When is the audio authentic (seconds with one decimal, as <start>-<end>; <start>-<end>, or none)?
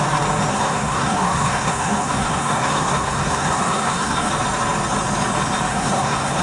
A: 0.0-0.5; 4.3-5.7